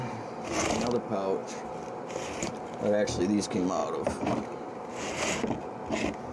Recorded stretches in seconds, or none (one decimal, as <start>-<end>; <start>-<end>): 0.0-6.3